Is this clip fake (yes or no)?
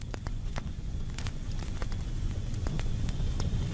yes